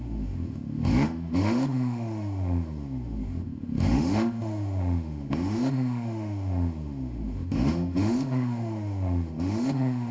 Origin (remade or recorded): remade